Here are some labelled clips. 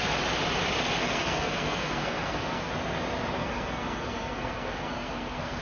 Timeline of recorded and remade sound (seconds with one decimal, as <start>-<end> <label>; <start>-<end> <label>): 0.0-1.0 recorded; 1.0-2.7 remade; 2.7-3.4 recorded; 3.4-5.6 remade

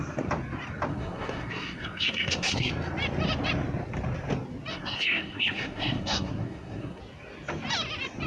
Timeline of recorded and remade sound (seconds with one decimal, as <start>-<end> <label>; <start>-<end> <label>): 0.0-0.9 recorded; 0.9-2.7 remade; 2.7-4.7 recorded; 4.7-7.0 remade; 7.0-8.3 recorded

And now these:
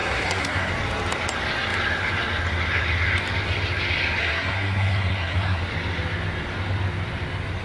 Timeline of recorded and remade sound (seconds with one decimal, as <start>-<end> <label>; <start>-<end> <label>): 0.0-0.7 remade; 0.7-4.2 recorded; 4.2-5.6 remade; 5.6-7.6 recorded